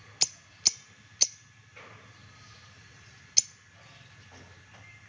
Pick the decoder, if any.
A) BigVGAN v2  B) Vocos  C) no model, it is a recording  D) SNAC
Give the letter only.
C